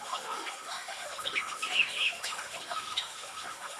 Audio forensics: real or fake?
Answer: fake